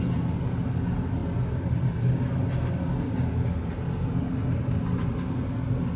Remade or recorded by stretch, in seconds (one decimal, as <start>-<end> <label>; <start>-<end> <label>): 0.0-6.0 recorded